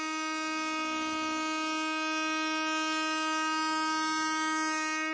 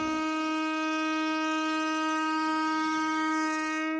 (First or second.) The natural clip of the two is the first